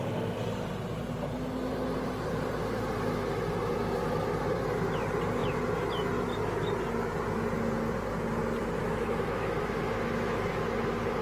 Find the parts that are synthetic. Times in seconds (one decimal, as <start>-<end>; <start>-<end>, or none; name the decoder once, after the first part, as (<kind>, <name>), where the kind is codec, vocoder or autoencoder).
8.6-10.6 (autoencoder, DAC-VAE)